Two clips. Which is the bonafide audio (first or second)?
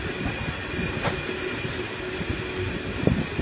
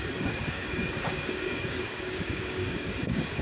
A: first